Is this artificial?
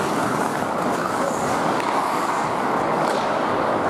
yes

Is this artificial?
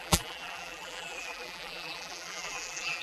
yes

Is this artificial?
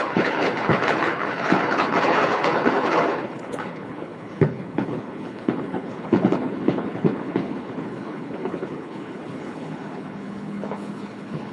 yes